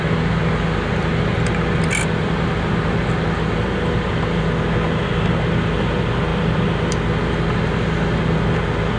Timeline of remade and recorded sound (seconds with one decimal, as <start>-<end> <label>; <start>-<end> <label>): 0.0-9.0 recorded